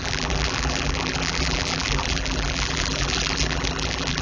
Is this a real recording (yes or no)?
no